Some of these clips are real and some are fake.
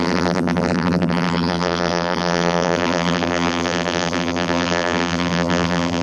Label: fake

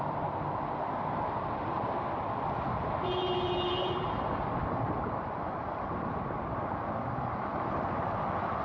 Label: real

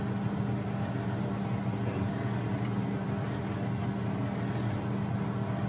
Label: real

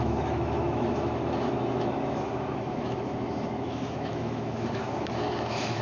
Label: fake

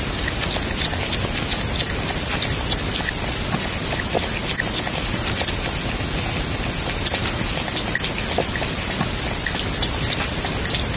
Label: real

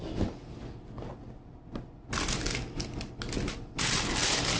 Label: real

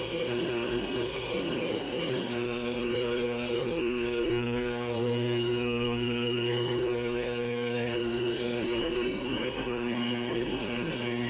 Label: fake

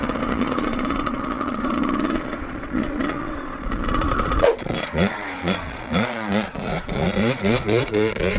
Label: fake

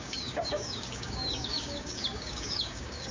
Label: fake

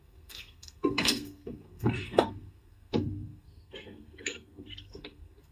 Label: fake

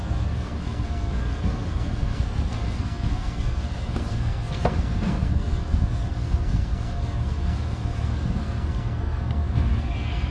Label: fake